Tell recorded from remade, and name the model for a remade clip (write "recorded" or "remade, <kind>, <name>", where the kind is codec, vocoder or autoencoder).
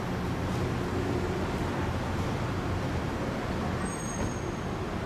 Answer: recorded